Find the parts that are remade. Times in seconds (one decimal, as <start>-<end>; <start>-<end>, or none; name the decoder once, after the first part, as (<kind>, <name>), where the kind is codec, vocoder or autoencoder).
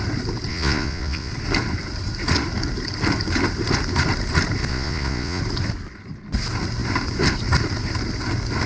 0.5-1.3 (vocoder, Vocos); 4.7-5.4